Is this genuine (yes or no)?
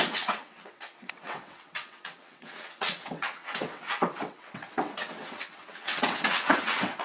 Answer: no